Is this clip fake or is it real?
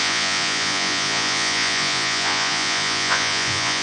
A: fake